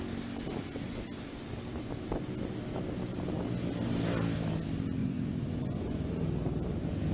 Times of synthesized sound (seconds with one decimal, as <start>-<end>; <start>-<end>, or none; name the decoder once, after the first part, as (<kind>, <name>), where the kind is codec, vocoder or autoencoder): 5.0-6.1 (vocoder, Vocos)